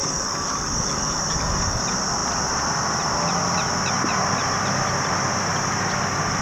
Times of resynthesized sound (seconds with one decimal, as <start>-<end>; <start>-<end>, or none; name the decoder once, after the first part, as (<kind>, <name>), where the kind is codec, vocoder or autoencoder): 0.0-1.8 (codec, DAC)